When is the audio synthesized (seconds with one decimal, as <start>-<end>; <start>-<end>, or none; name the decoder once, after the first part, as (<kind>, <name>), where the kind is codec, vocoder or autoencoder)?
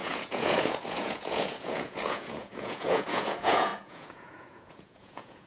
0.0-5.5 (vocoder, Vocos)